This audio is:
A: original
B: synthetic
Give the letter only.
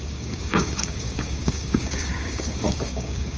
B